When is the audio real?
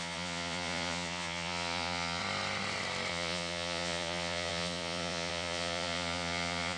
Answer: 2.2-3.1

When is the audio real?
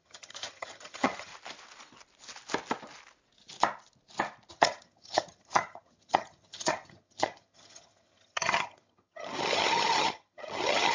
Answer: 1.3-4.5